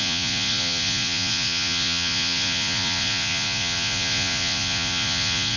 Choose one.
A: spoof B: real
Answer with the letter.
A